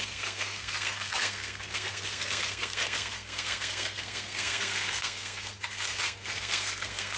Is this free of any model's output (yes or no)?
no